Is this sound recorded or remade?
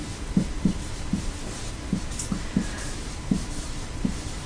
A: remade